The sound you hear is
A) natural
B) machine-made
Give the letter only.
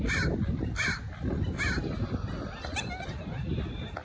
A